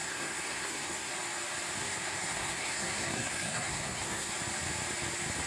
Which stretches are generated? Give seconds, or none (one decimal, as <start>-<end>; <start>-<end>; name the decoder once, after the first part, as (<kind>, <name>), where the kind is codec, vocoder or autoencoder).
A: 0.0-1.1 (codec, SNAC); 1.8-4.3